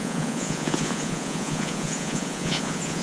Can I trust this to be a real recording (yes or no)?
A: no